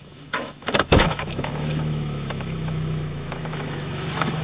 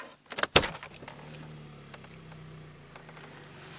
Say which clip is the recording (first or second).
second